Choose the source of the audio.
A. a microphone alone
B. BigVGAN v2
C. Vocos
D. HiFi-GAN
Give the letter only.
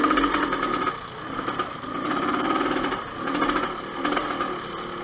A